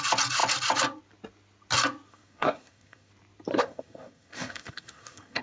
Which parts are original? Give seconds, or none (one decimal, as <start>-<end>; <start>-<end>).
0.0-2.1; 3.1-3.5